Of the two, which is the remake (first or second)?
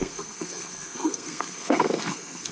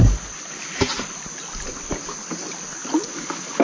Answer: first